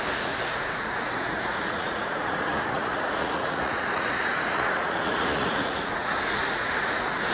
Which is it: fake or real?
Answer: fake